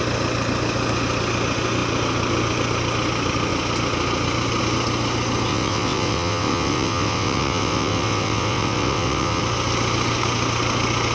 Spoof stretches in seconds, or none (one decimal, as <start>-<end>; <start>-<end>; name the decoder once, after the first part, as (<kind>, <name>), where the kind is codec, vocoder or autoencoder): 5.5-9.4 (vocoder, WaveNeXt)